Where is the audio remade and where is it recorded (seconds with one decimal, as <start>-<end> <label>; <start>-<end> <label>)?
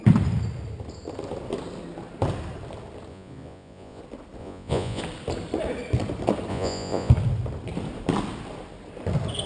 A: 0.0-3.1 recorded; 3.1-4.0 remade; 4.0-4.4 recorded; 4.4-5.0 remade; 5.0-6.5 recorded; 6.5-7.1 remade; 7.1-9.5 recorded